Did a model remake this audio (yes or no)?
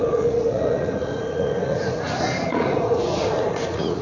yes